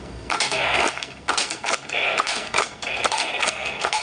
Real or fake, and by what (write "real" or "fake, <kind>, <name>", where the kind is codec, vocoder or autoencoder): fake, codec, SNAC